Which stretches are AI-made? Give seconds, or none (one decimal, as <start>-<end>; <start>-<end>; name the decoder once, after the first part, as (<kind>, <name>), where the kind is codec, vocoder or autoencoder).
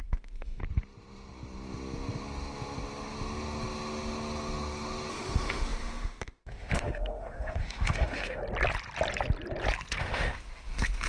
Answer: 0.0-0.6 (autoencoder, DAC-VAE); 5.1-8.4; 10.0-11.1